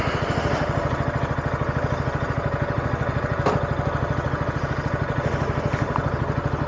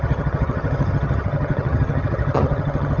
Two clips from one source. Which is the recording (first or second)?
first